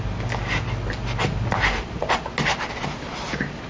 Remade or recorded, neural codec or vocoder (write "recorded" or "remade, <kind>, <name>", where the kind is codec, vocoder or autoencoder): recorded